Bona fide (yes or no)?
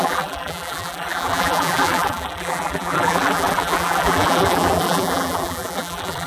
no